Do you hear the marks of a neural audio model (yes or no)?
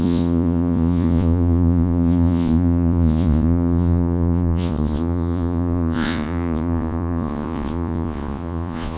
yes